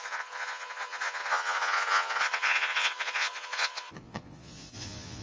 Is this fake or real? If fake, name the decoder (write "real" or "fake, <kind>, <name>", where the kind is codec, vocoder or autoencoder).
fake, vocoder, Vocos